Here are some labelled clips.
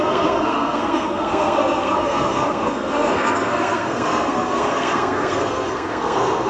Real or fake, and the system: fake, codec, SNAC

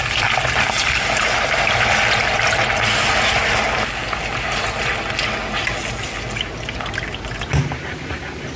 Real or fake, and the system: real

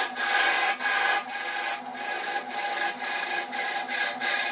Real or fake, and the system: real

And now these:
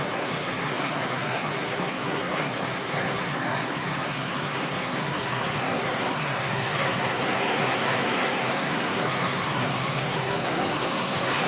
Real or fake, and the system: fake, codec, SNAC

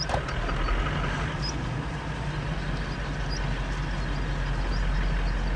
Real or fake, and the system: real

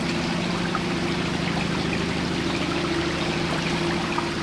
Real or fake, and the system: real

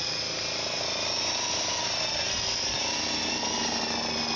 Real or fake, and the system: real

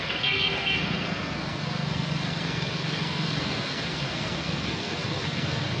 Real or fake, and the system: fake, codec, SNAC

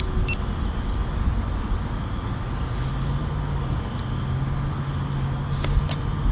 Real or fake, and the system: real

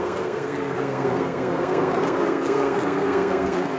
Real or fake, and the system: fake, codec, SNAC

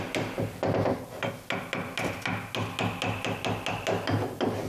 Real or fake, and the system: real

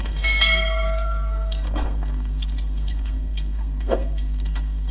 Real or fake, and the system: fake, codec, SNAC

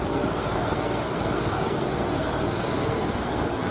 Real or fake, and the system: fake, codec, SNAC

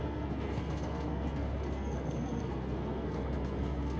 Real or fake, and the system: fake, codec, SNAC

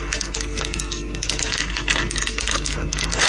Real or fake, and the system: fake, codec, SNAC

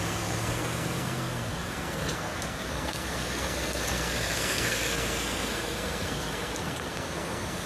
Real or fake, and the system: fake, codec, SNAC